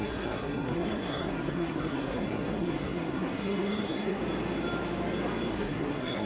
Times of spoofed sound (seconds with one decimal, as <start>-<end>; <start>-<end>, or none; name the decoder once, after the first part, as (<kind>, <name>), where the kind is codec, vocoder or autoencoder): 0.0-4.2 (codec, SNAC); 5.5-6.3